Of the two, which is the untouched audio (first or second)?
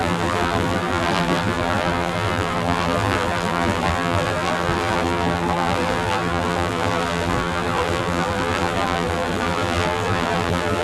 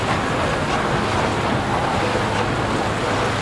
second